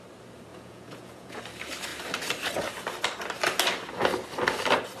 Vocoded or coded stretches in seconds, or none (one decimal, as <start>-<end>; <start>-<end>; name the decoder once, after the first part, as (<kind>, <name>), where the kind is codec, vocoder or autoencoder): 0.5-1.4 (vocoder, Vocos)